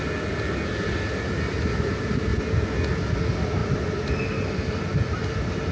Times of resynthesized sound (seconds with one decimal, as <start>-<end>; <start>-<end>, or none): none